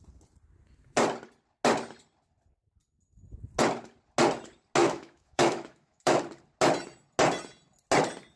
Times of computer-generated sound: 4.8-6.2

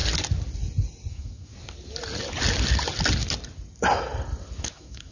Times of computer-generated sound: 1.1-1.5; 4.6-5.1

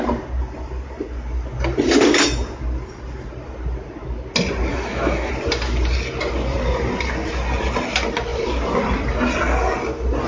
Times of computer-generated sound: 4.7-5.3

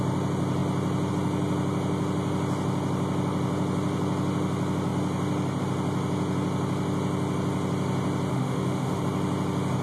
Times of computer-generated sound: 8.3-9.0

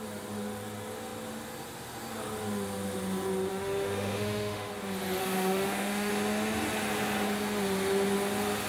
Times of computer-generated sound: 3.5-4.7; 5.2-6.1

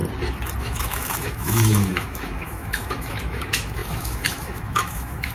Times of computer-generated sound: 0.6-5.3